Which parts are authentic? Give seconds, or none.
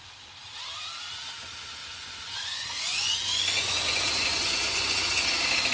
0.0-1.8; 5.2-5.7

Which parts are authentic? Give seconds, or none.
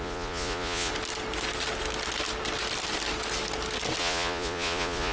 0.9-4.0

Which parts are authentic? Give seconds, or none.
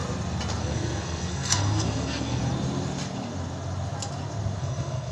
0.0-0.6; 2.4-4.6